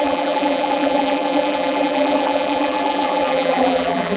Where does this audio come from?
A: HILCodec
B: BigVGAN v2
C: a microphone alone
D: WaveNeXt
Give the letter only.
B